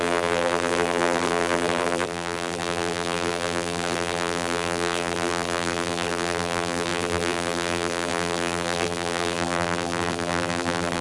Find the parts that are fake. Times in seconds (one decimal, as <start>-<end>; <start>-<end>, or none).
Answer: 0.0-11.0